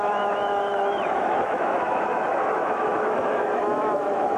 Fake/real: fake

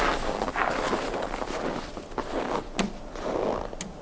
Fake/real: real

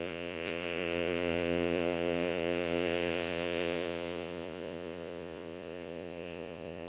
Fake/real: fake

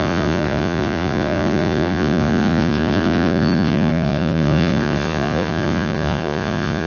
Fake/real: fake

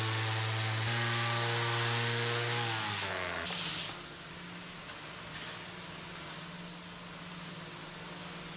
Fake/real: real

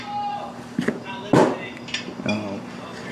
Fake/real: real